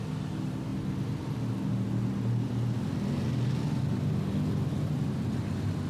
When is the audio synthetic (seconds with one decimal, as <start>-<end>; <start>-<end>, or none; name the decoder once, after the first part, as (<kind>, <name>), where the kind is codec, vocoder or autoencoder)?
none